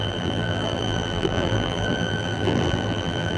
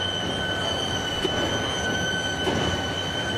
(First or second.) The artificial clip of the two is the first